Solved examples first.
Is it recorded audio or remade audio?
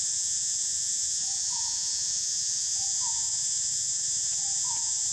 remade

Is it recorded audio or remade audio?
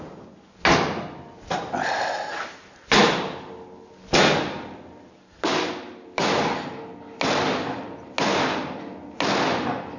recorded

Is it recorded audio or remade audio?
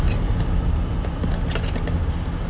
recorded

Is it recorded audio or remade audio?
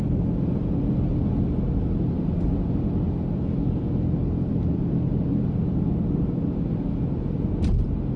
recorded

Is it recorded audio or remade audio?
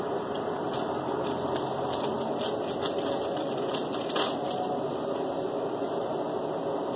recorded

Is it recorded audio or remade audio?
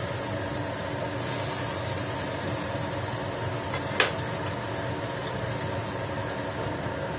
recorded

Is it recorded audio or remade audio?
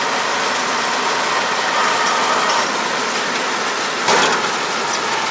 recorded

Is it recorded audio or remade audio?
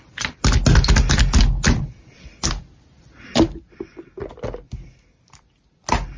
recorded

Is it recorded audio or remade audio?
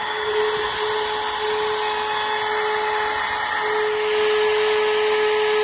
recorded